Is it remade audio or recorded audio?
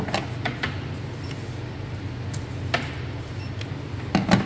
recorded